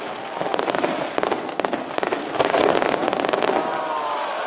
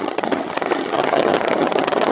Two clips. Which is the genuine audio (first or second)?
first